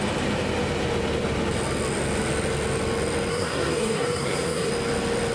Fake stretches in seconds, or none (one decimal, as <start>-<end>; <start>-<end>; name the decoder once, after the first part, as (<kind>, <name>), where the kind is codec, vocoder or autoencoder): 3.3-4.7 (codec, SNAC)